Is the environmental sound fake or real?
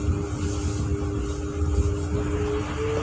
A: real